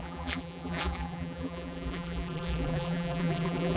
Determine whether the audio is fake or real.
fake